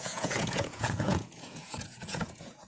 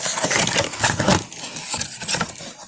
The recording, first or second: second